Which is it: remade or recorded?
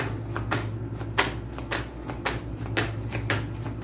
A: recorded